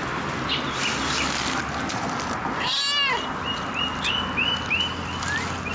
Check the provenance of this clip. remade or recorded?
recorded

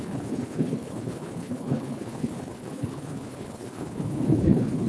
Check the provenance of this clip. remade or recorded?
remade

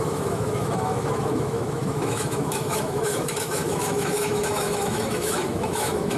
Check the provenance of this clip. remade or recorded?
remade